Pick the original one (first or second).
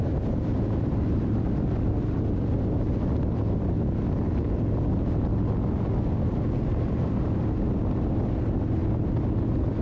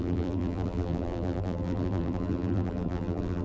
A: first